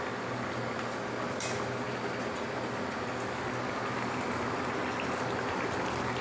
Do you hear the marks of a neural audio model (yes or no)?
no